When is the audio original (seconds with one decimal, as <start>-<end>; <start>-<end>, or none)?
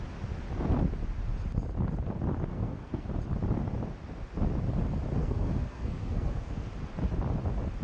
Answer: 0.0-2.5; 3.1-5.2; 6.7-7.8